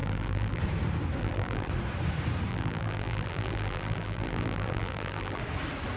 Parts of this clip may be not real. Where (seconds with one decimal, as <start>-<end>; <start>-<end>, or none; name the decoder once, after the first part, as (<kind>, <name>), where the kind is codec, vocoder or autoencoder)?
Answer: 0.0-0.6 (vocoder, BigVGAN v2); 1.2-1.7; 2.5-5.4